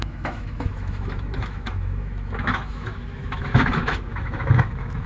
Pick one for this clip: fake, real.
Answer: fake